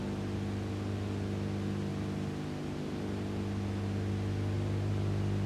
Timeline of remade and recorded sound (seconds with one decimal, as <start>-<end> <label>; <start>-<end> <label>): 0.0-5.5 recorded

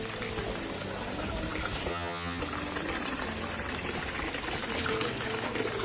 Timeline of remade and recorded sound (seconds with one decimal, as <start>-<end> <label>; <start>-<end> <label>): 0.0-1.9 recorded; 1.9-2.4 remade; 2.4-5.8 recorded

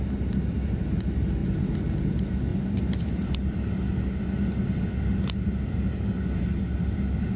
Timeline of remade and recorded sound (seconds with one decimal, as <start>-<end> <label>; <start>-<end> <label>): 0.0-7.4 recorded

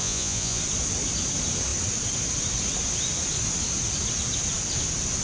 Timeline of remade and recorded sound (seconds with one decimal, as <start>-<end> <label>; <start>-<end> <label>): 0.0-0.6 remade; 0.6-5.2 recorded

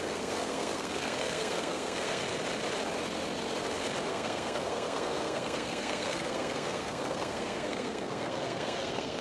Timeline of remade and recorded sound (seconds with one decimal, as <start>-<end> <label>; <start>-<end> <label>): 0.0-2.2 remade; 2.2-4.1 recorded; 4.1-9.2 remade

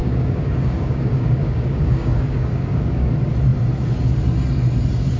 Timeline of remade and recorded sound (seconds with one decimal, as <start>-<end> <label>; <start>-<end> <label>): 0.0-3.1 remade; 3.1-5.2 recorded

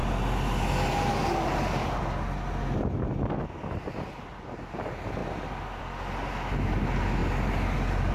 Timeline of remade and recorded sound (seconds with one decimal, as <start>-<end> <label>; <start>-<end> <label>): 0.0-8.1 recorded